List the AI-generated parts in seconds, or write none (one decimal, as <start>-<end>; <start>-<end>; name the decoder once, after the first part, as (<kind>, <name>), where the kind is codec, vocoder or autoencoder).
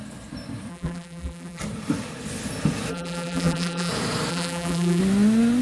0.7-1.6 (vocoder, BigVGAN v2); 2.9-3.9; 4.3-5.0